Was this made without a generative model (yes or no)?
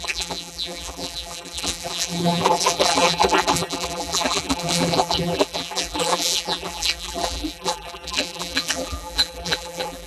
no